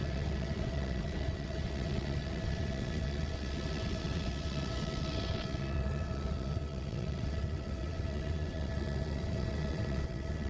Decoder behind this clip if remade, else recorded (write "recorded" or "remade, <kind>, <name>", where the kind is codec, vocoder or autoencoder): remade, vocoder, WaveNeXt